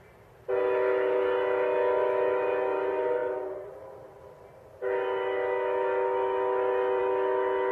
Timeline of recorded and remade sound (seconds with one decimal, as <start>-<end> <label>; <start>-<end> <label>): 0.0-7.7 recorded